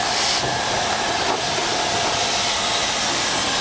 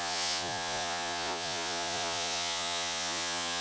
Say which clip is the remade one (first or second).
second